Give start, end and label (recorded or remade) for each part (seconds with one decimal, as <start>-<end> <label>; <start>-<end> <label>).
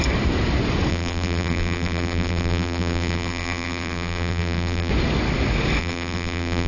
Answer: 0.0-0.9 recorded; 0.9-4.9 remade; 4.9-5.8 recorded; 5.8-6.7 remade